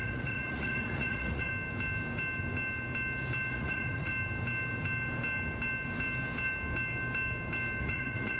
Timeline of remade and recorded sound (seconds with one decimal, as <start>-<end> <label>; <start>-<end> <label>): 0.0-1.5 remade; 1.5-3.5 recorded; 3.5-4.1 remade; 4.1-7.8 recorded; 7.8-8.4 remade